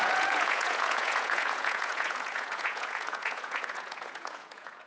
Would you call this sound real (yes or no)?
no